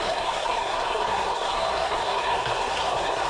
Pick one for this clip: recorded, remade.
remade